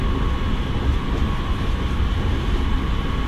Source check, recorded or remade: recorded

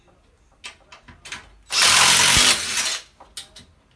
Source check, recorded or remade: recorded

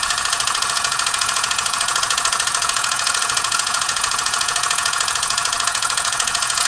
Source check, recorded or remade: remade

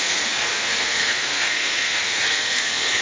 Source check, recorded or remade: remade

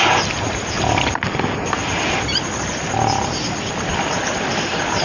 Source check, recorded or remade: recorded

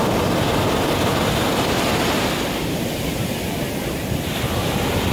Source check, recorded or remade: recorded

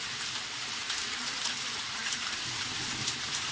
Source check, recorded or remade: remade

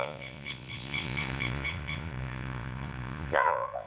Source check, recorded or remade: remade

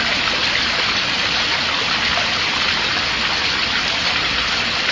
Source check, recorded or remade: recorded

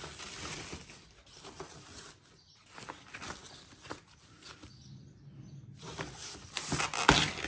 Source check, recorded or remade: recorded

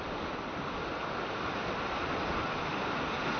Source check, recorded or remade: recorded